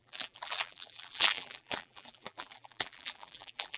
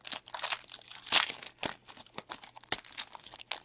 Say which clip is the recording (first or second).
second